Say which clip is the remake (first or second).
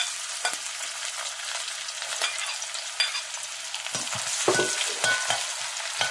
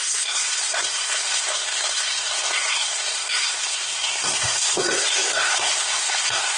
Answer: second